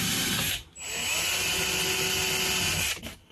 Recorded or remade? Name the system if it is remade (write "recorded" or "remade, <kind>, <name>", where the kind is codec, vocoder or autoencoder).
recorded